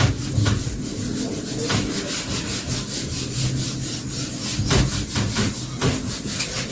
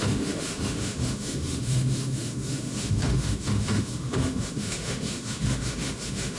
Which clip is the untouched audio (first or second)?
first